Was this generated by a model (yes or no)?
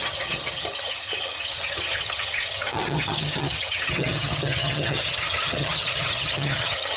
yes